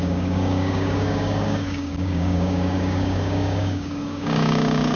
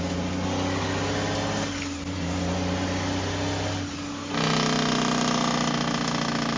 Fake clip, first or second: first